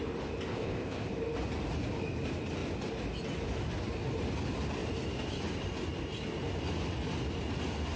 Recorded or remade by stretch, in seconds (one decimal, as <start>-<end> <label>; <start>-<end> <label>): 0.0-0.5 recorded; 0.5-1.1 remade; 1.1-8.0 recorded